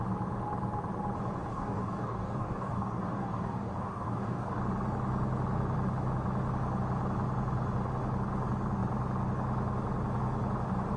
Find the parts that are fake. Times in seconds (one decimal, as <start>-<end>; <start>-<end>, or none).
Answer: 1.5-4.6

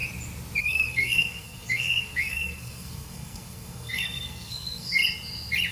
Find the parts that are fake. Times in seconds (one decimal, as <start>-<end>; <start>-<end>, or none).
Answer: 0.6-5.0

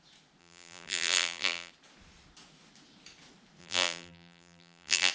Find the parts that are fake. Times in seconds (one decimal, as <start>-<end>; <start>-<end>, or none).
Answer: 0.4-1.7; 3.6-5.1